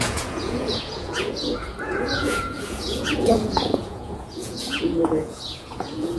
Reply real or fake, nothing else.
fake